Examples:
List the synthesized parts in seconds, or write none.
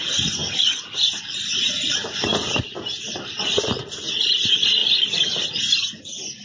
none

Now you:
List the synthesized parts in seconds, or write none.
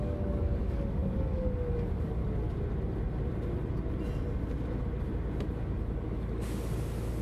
0.0-2.2 (codec, DAC); 5.8-7.2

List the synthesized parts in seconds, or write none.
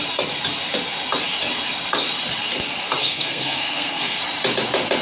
3.0-4.2 (codec, SNAC)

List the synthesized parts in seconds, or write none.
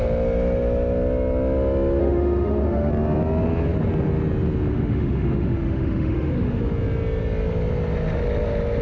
2.0-2.9 (autoencoder, DAC-VAE); 4.7-6.6